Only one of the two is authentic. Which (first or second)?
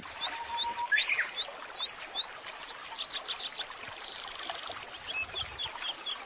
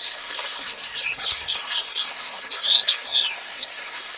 first